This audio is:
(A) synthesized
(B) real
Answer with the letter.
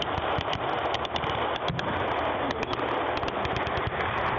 B